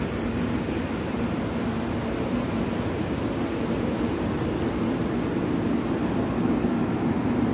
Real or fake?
real